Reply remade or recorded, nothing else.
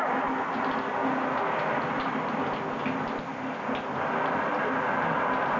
recorded